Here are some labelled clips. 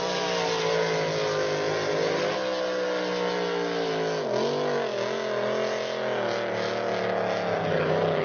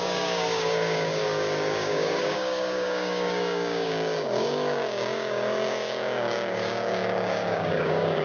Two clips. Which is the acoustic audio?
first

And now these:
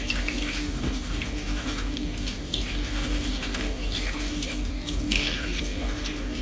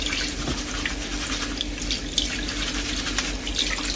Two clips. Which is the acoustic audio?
second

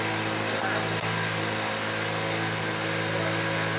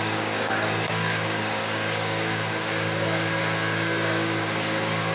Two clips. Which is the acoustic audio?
first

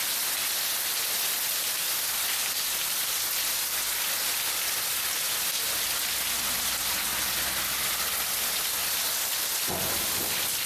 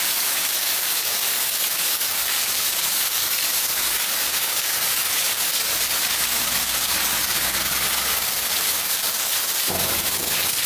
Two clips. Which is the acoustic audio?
first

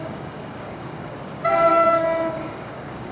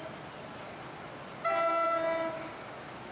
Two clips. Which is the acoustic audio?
second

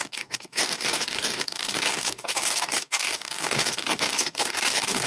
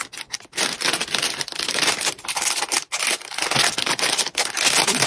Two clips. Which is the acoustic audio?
second